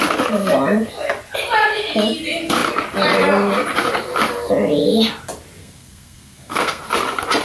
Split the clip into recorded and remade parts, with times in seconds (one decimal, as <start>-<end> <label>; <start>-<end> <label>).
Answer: 0.0-5.6 recorded; 5.6-6.8 remade; 6.8-7.4 recorded